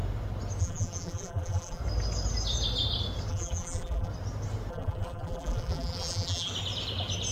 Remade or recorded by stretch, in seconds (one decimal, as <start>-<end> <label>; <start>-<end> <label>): 0.0-0.6 recorded; 0.6-1.8 remade; 1.8-3.3 recorded; 3.3-4.1 remade; 4.1-4.7 recorded; 4.7-6.5 remade; 6.5-7.3 recorded